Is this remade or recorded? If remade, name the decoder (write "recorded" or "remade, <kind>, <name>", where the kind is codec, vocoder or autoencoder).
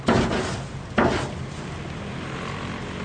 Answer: recorded